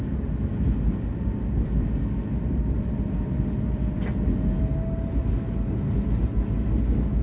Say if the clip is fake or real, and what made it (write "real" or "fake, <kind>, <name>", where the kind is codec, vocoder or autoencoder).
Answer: real